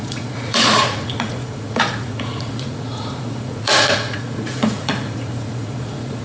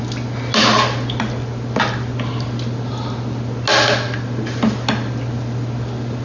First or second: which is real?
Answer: second